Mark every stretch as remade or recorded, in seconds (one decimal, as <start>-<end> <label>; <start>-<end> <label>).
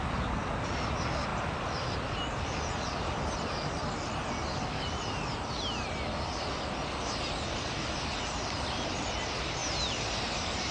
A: 0.0-10.7 recorded